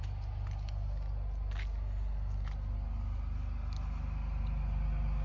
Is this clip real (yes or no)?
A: yes